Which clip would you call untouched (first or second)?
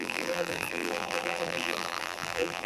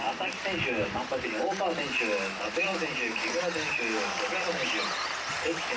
second